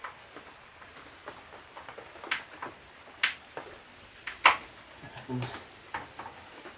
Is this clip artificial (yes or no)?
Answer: no